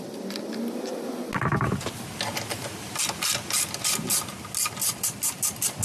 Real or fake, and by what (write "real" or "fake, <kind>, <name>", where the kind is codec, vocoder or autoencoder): real